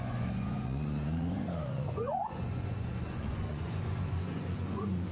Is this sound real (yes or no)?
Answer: no